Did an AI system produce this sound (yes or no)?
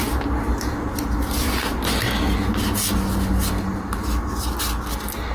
no